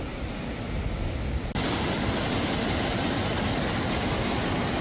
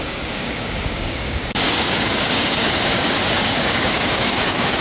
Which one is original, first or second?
first